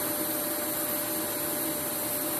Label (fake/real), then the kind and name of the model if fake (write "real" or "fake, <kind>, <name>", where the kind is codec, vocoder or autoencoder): real